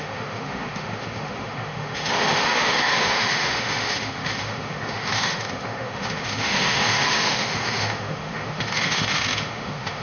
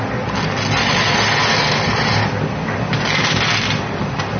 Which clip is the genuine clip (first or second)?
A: second